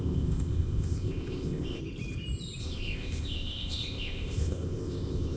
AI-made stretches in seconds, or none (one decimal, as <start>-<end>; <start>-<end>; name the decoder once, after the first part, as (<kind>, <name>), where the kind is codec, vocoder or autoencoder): 0.0-1.8 (codec, ZipCodec); 2.6-5.4